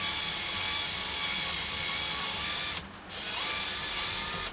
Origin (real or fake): real